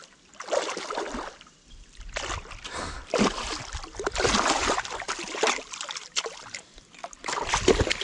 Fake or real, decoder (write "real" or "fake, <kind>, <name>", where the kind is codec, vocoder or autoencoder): real